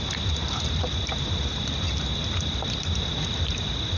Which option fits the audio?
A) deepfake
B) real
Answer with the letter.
B